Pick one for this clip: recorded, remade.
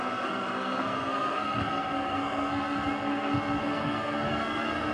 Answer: remade